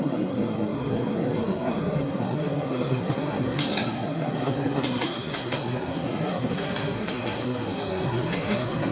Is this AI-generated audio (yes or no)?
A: yes